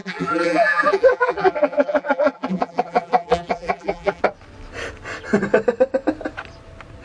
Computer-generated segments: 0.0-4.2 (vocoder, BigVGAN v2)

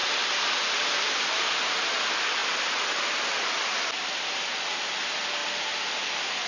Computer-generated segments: 0.0-2.4 (vocoder, BigVGAN v2); 5.0-5.4

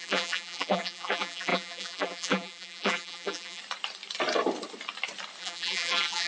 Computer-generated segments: 0.0-3.6 (vocoder, BigVGAN v2); 5.4-6.3

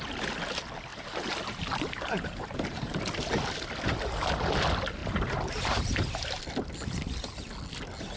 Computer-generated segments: 0.9-3.0 (vocoder, BigVGAN v2); 5.0-6.4

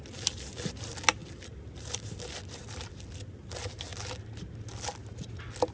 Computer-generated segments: 1.2-3.1 (vocoder, BigVGAN v2)

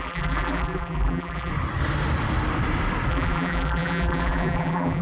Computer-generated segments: 0.0-1.5 (vocoder, BigVGAN v2); 3.1-5.0

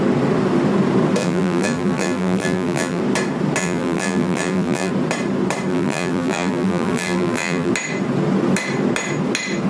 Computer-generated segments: 1.2-3.0 (vocoder, BigVGAN v2); 3.6-4.9; 5.7-7.7